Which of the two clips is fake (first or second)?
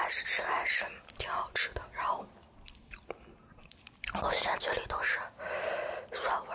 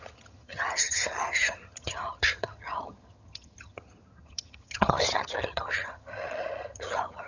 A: second